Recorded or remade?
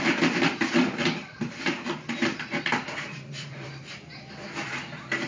remade